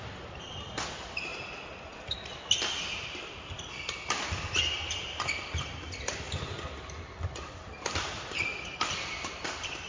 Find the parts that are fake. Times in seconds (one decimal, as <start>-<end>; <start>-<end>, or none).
0.0-9.9